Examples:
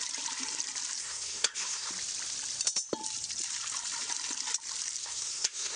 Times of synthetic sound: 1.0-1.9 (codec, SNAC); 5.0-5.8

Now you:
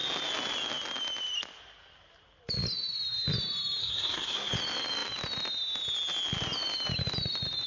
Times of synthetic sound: 3.8-4.5 (codec, SNAC)